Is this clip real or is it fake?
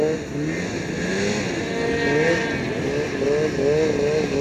real